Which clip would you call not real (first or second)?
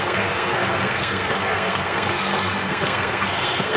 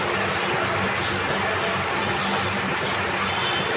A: first